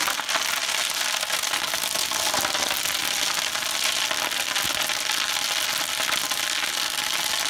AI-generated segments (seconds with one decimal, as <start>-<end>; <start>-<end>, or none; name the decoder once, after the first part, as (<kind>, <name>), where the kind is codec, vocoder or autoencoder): none